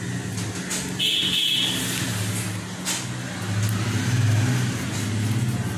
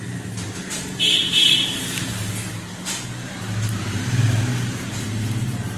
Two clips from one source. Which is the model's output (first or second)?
second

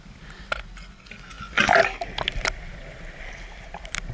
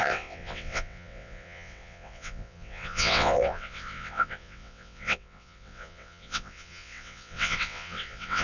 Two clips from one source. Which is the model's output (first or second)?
second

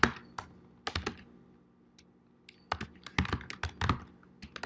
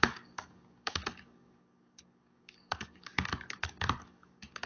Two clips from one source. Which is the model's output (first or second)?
second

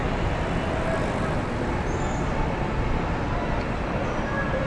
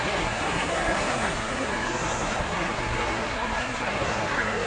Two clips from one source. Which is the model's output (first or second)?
second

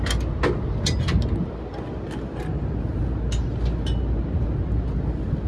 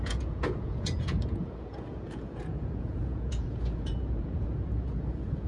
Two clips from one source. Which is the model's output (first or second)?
second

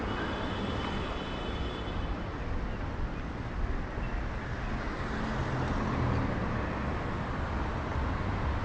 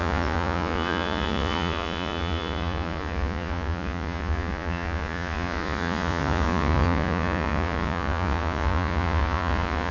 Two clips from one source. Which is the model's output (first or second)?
second